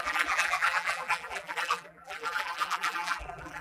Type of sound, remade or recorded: remade